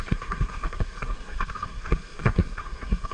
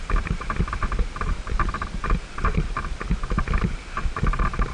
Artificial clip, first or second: first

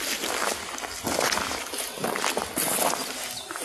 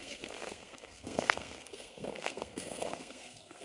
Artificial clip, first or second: second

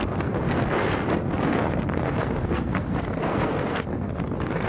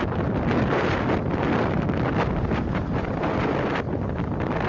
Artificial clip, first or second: first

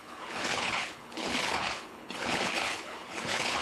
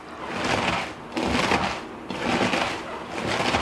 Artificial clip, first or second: first